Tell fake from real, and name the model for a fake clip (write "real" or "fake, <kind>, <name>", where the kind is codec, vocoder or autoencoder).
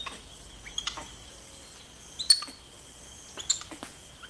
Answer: real